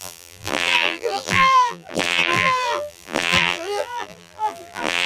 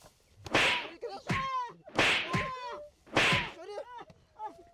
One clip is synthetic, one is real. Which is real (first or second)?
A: second